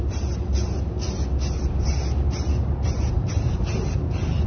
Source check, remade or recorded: recorded